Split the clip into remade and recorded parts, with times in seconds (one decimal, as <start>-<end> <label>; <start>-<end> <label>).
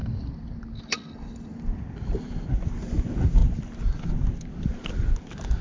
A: 0.0-5.6 recorded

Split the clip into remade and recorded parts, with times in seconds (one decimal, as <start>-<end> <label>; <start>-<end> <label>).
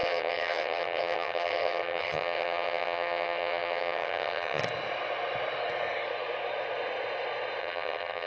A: 0.0-4.6 remade; 4.6-7.6 recorded; 7.6-8.3 remade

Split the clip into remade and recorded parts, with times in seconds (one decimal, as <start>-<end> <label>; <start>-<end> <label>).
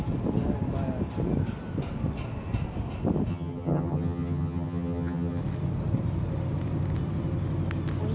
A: 0.0-3.3 recorded; 3.3-5.4 remade; 5.4-8.1 recorded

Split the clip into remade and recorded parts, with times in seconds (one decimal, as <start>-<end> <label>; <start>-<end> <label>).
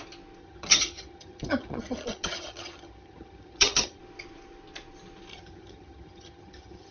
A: 0.0-0.4 recorded; 0.4-4.0 remade; 4.0-5.3 recorded; 5.3-6.9 remade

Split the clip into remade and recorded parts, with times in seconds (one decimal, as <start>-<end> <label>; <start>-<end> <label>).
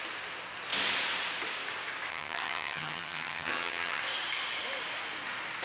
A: 0.0-2.1 recorded; 2.1-4.0 remade; 4.0-5.6 recorded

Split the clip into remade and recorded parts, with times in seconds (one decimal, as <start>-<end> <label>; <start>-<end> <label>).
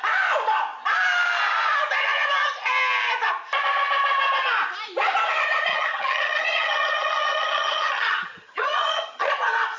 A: 0.0-5.7 recorded; 5.7-9.3 remade; 9.3-9.8 recorded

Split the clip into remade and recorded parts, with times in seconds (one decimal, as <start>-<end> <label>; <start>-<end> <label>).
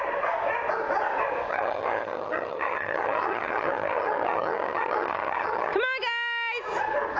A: 0.0-1.5 recorded; 1.5-5.7 remade; 5.7-7.2 recorded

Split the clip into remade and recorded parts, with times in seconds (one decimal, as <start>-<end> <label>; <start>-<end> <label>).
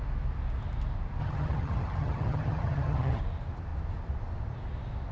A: 0.0-1.2 recorded; 1.2-3.2 remade; 3.2-5.1 recorded